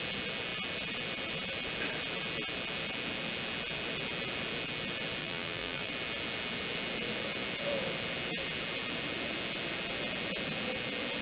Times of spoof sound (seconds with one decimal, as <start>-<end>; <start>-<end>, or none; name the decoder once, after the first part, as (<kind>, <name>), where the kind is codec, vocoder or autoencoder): 5.2-5.9 (vocoder, BigVGAN v2)